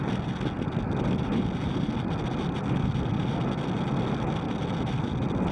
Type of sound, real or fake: real